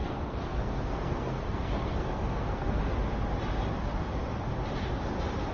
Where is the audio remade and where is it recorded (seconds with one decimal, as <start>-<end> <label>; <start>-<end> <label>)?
0.0-2.9 remade; 2.9-5.5 recorded